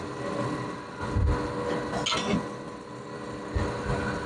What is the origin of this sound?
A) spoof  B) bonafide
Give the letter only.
B